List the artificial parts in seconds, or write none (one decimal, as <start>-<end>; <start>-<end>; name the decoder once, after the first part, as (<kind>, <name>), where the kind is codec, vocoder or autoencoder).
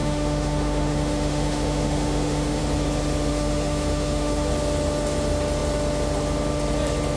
0.0-2.6 (autoencoder, DAC-VAE); 3.3-4.5